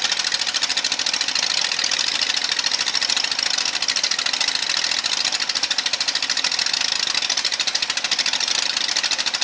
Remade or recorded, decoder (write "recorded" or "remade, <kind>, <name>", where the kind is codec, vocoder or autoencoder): recorded